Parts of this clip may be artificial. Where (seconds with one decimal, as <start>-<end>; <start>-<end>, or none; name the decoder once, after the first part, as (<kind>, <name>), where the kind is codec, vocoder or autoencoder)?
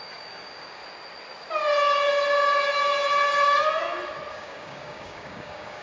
0.0-0.8 (codec, DAC); 4.3-5.8